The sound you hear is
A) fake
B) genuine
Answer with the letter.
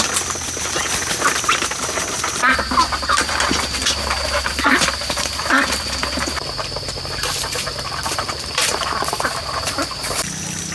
A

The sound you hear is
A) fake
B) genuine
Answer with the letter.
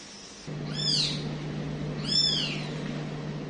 B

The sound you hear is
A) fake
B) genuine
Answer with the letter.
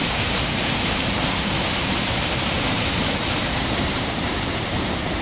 A